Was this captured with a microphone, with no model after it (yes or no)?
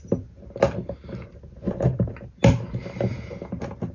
yes